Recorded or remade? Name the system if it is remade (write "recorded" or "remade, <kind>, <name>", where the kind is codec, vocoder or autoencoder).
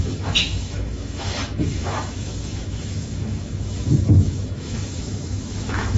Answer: remade, autoencoder, DAC-VAE